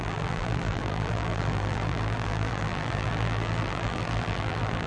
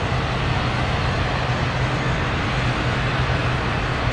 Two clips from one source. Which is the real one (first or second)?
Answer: second